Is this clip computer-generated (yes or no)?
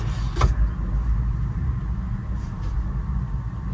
no